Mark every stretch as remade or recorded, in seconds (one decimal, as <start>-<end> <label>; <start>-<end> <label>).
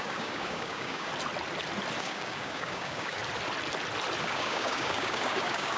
0.0-1.1 remade; 1.1-2.0 recorded; 2.0-3.2 remade; 3.2-4.2 recorded; 4.2-5.8 remade